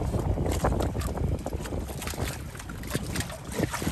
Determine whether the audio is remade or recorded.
recorded